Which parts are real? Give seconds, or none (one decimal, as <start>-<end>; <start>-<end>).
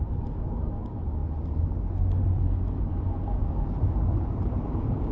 1.2-4.3